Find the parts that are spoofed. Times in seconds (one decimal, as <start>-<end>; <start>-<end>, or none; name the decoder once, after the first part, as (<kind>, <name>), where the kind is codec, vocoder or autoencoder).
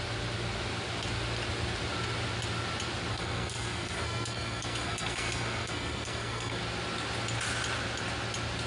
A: 3.1-6.6 (codec, SNAC)